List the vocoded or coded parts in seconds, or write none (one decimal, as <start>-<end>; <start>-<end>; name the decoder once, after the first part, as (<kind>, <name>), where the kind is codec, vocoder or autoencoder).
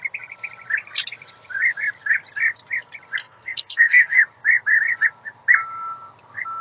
3.2-4.2 (codec, SNAC)